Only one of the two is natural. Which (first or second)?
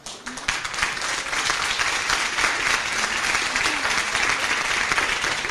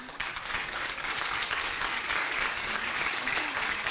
first